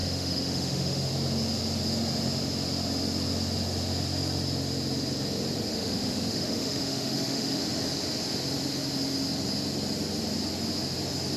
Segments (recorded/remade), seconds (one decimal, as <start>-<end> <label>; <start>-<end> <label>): 0.0-1.1 remade; 1.1-5.7 recorded; 5.7-7.6 remade; 7.6-11.4 recorded